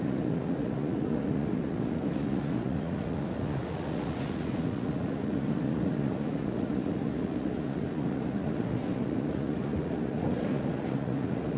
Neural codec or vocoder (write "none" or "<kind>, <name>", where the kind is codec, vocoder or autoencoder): vocoder, Vocos